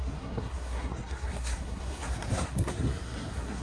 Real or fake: fake